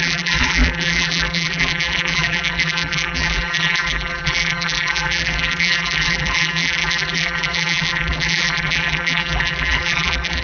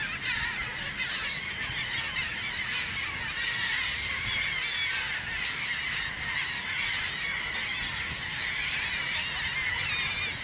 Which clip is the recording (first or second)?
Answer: second